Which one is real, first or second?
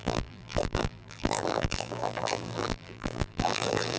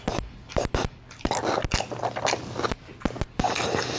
second